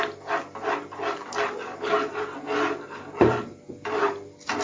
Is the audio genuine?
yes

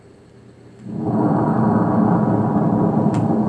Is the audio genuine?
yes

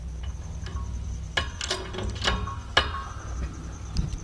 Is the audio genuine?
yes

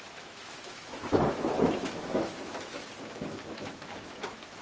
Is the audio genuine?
no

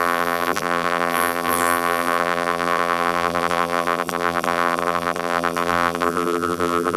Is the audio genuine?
no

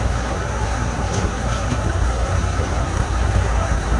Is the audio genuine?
no